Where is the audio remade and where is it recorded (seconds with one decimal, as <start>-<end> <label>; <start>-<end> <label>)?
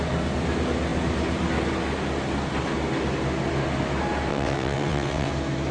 0.0-4.3 recorded; 4.3-5.3 remade; 5.3-5.7 recorded